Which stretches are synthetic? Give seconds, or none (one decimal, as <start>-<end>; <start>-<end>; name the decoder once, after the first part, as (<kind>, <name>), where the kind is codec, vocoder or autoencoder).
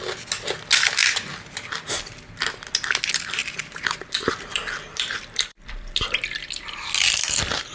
3.4-5.9 (vocoder, BigVGAN v2)